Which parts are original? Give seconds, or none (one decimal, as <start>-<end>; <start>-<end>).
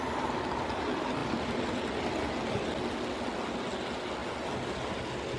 0.0-5.4